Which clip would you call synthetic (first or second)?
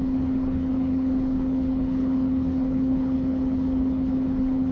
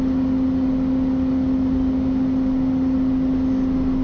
first